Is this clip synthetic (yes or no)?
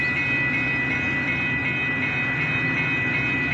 no